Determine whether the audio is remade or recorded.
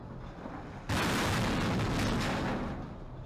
recorded